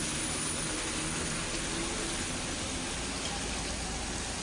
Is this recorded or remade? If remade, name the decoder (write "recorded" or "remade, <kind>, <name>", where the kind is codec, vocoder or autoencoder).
recorded